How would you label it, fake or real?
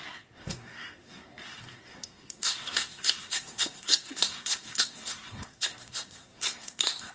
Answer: fake